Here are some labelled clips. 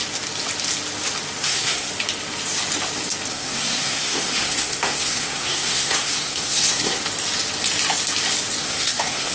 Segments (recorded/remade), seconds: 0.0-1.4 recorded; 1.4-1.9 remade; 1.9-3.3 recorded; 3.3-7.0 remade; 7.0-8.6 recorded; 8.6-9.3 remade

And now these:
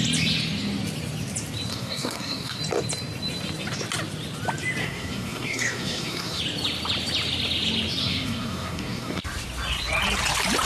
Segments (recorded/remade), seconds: 0.0-1.7 recorded; 1.7-2.6 remade; 2.6-4.8 recorded; 4.8-6.4 remade; 6.4-8.0 recorded; 8.0-9.2 remade; 9.2-10.7 recorded

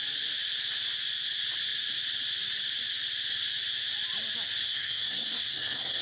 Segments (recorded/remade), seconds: 0.0-4.7 recorded; 4.7-6.0 remade